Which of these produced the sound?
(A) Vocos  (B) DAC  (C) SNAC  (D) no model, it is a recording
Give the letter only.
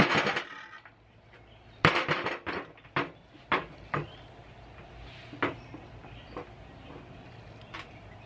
D